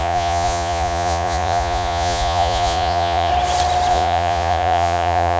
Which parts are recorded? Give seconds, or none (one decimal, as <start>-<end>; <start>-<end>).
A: 3.3-3.9